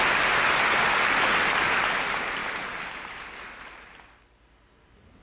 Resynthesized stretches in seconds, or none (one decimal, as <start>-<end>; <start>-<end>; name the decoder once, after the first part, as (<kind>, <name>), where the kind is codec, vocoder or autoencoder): 2.4-3.3 (vocoder, BigVGAN v2)